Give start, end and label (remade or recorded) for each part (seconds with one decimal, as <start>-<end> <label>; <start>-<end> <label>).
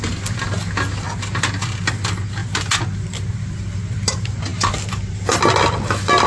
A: 0.0-6.3 recorded